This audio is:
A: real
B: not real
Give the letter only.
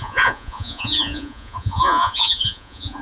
B